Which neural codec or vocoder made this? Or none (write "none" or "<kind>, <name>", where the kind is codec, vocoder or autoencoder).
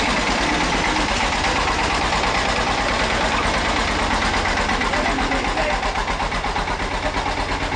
none